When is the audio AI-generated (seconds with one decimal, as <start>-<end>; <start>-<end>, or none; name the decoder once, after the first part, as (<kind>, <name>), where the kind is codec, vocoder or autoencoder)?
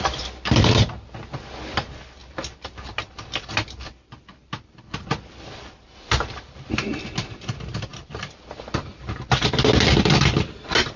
2.2-7.0 (vocoder, BigVGAN v2); 7.9-9.5